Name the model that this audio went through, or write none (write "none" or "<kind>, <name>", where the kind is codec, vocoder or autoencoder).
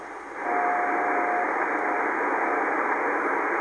none